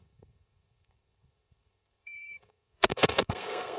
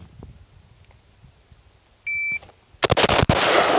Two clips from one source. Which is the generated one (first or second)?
first